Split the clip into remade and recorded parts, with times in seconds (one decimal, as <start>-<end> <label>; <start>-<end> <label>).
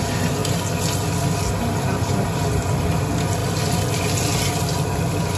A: 0.0-5.4 recorded